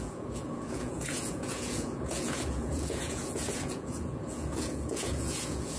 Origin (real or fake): fake